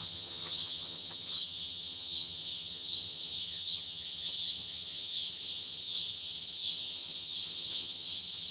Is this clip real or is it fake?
fake